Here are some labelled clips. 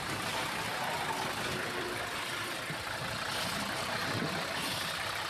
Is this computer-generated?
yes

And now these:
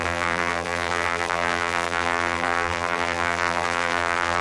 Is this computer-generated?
yes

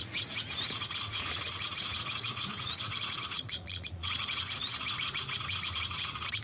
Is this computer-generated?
yes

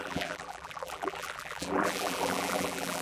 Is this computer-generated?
yes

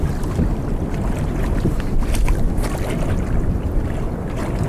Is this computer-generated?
no